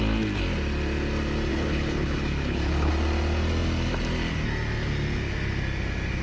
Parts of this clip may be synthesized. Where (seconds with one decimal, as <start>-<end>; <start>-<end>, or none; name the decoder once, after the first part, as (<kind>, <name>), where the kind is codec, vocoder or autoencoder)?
1.5-2.9 (codec, HILCodec)